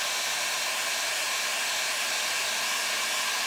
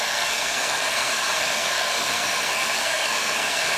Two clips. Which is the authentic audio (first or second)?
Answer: first